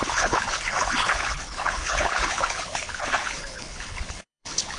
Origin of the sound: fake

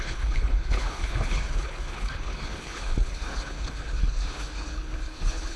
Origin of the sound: fake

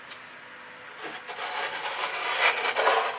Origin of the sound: real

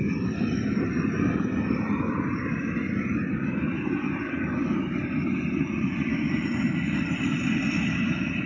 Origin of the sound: real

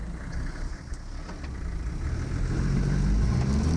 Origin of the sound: real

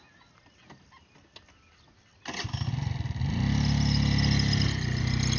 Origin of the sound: real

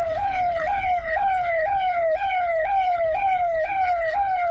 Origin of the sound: fake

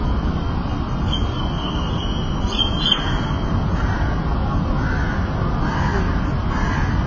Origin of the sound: real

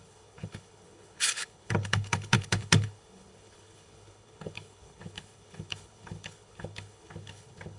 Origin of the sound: fake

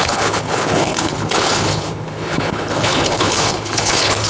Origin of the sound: fake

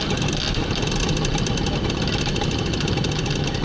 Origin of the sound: real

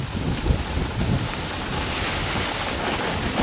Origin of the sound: real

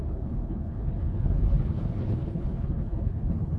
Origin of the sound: fake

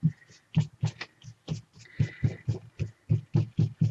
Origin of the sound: real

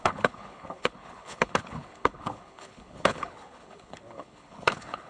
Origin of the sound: fake